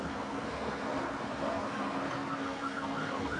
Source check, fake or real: fake